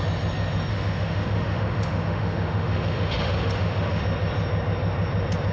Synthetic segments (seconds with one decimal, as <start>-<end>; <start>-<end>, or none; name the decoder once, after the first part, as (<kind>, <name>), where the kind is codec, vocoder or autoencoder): 0.7-4.0 (autoencoder, DAC-VAE)